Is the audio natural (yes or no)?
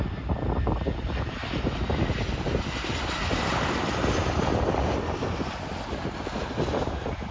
yes